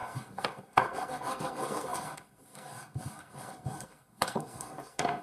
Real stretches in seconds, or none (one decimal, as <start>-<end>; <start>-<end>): none